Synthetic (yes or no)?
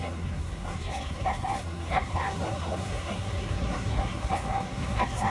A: yes